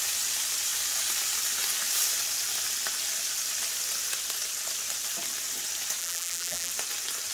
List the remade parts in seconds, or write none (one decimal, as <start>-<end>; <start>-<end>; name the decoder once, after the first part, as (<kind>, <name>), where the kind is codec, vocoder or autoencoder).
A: 6.0-6.7 (vocoder, BigVGAN v2)